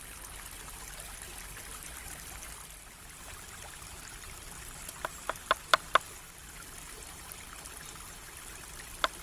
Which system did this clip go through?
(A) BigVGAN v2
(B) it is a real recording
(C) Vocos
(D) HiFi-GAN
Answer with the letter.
B